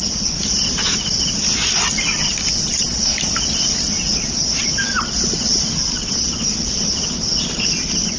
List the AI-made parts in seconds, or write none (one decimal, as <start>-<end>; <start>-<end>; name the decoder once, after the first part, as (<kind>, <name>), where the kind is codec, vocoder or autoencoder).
none